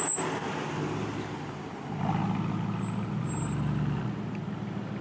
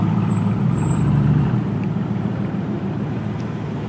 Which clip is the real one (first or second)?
first